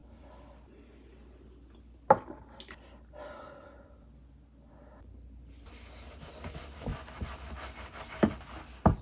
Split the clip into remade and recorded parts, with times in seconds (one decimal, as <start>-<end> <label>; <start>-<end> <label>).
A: 0.0-9.0 recorded

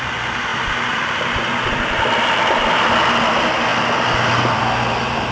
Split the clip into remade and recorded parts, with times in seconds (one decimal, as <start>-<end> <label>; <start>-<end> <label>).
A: 0.0-0.5 recorded; 0.5-2.9 remade; 2.9-3.7 recorded; 3.7-4.6 remade; 4.6-5.3 recorded

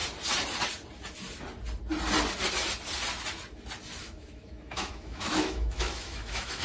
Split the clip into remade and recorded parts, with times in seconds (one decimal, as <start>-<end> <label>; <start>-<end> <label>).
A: 0.0-4.0 recorded; 4.0-6.6 remade

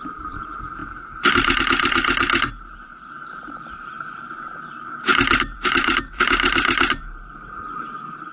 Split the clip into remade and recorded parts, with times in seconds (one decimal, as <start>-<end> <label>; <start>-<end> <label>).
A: 0.0-8.3 remade